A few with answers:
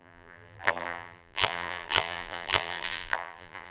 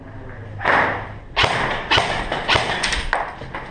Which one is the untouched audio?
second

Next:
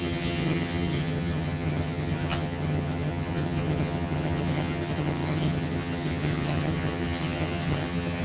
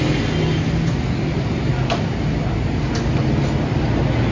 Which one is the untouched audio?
second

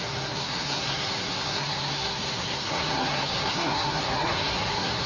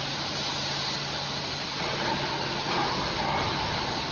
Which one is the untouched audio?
second